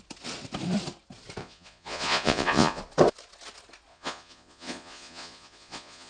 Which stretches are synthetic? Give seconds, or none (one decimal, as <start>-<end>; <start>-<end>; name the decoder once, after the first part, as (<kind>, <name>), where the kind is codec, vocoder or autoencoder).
1.4-2.8 (vocoder, Vocos); 3.9-6.1